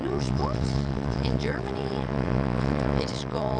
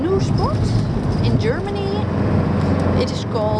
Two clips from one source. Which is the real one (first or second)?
second